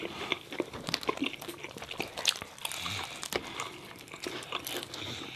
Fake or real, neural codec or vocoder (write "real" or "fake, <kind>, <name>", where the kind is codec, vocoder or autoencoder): real